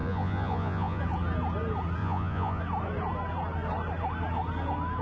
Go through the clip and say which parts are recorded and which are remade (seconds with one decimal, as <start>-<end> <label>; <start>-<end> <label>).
0.0-1.0 remade; 1.0-2.0 recorded; 2.0-2.6 remade; 2.6-5.0 recorded